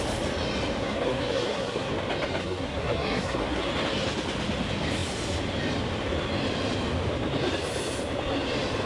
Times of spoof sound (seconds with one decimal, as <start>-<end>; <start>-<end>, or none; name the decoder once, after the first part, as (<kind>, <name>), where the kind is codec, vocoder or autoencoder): 0.8-1.9 (codec, SNAC); 2.4-3.7